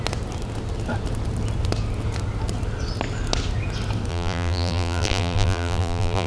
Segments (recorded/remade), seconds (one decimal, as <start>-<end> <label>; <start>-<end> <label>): 0.0-4.1 recorded; 4.1-6.3 remade